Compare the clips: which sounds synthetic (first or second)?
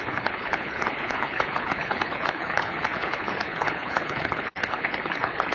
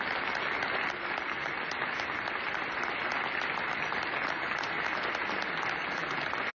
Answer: first